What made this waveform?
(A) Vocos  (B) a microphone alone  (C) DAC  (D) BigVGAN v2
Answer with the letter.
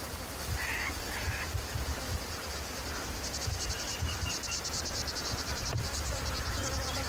D